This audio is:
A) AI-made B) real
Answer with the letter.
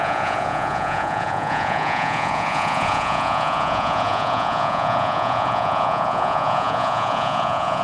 A